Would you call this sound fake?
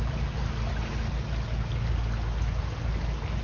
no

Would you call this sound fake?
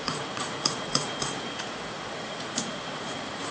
yes